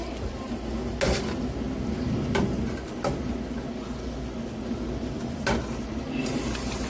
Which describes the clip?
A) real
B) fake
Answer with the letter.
A